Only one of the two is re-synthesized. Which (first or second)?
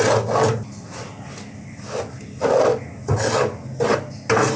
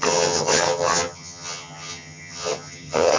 second